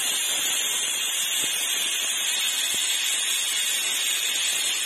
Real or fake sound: real